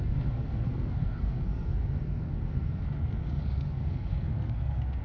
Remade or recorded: remade